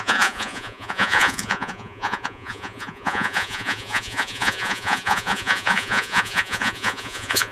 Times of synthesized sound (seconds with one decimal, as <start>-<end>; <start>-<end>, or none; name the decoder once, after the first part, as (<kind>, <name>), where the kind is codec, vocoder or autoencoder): 0.0-7.5 (vocoder, Vocos)